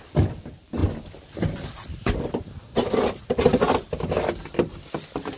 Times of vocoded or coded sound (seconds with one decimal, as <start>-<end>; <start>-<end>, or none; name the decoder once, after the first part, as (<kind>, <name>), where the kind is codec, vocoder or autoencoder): none